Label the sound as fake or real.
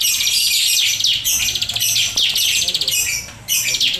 real